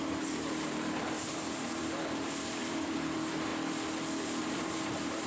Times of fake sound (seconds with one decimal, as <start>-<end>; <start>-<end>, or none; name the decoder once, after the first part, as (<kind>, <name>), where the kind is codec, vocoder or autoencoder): 0.0-3.5 (vocoder, BigVGAN v2); 4.4-5.3

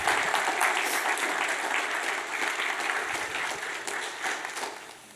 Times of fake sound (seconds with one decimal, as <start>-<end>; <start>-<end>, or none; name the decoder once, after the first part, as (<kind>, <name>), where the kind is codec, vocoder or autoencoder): none